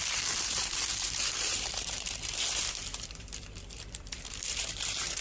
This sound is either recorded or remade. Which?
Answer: remade